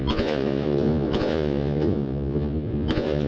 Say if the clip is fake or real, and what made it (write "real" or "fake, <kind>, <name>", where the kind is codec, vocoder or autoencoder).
fake, vocoder, Vocos